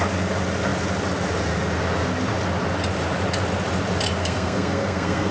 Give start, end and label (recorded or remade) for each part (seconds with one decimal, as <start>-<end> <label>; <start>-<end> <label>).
0.0-4.2 recorded; 4.2-5.3 remade